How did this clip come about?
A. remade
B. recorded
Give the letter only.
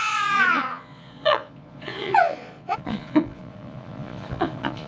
A